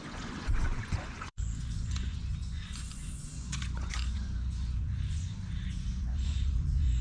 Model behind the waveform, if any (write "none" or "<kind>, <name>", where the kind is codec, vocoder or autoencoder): vocoder, Vocos